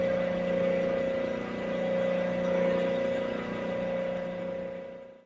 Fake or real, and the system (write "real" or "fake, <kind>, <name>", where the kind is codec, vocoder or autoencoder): real